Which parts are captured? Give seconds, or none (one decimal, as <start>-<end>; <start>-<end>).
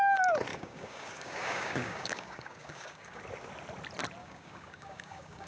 0.0-0.5; 3.2-4.2